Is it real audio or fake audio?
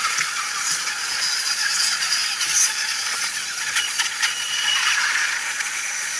fake